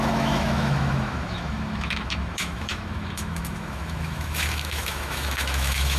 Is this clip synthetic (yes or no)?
yes